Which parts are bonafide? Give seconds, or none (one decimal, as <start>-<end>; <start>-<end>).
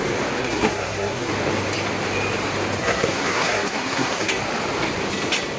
0.0-0.4; 1.3-2.8; 4.3-5.6